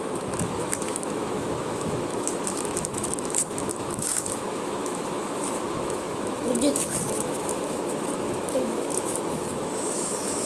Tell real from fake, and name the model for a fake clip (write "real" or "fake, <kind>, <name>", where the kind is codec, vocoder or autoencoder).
fake, autoencoder, DAC-VAE